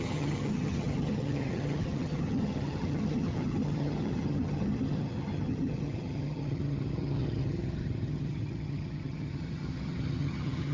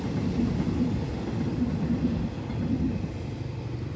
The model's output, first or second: first